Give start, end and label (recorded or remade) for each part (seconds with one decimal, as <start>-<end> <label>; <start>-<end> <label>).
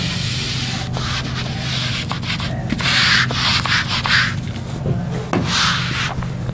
0.0-6.5 recorded